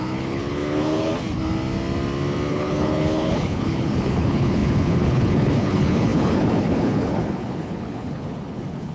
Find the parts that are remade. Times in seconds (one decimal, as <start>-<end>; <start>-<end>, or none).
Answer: 0.0-1.1; 2.5-8.9